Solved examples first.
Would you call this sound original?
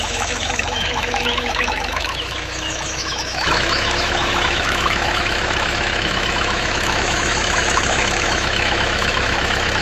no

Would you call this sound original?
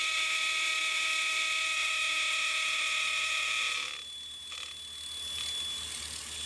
yes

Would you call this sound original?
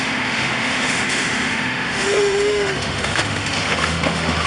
no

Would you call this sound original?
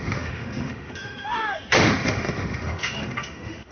no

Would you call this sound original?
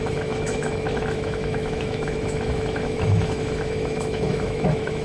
no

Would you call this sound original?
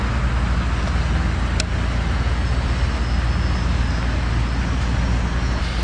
yes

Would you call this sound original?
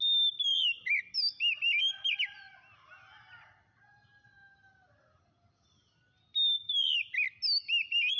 yes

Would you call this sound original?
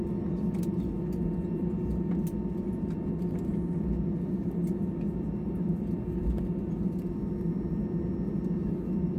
yes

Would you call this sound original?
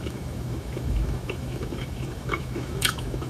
no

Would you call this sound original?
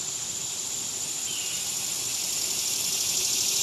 yes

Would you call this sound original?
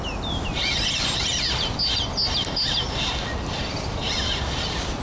yes